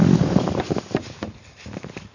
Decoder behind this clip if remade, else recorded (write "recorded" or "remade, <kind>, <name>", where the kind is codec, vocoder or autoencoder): recorded